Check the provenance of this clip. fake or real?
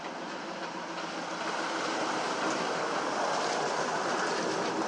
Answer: real